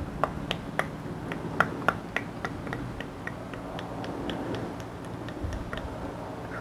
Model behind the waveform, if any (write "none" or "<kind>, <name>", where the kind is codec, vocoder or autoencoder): none